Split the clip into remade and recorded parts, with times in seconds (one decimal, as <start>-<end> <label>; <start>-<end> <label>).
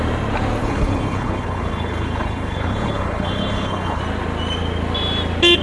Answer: 0.0-0.6 recorded; 0.6-4.0 remade; 4.0-5.6 recorded